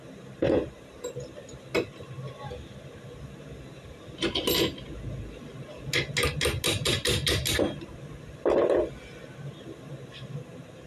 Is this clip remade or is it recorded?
recorded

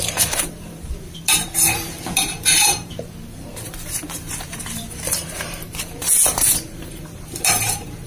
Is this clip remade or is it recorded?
remade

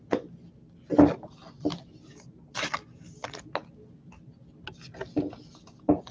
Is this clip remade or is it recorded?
recorded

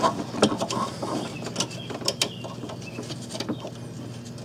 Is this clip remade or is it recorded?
recorded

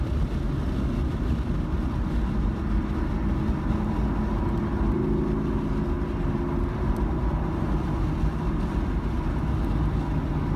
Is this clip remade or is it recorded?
recorded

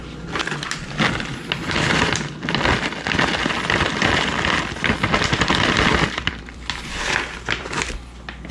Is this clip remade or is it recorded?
remade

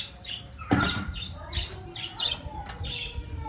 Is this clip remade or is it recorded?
remade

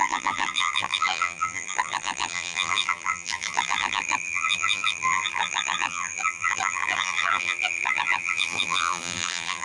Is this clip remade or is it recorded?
remade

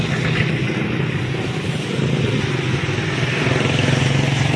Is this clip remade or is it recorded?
recorded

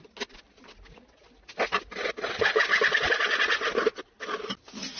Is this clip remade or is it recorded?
recorded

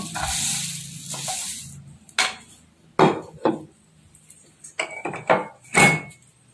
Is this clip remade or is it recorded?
recorded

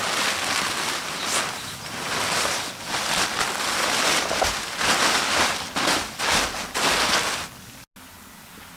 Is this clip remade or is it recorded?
recorded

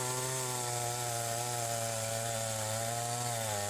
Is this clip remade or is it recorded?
recorded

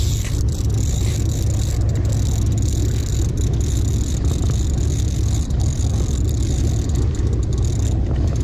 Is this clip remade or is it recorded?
recorded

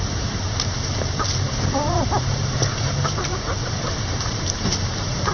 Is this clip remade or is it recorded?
remade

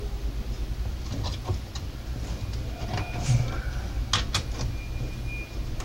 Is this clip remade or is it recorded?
recorded